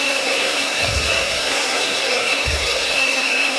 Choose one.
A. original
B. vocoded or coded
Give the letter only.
B